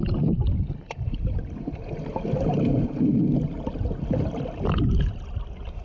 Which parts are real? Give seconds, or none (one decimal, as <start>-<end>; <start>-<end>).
0.0-5.8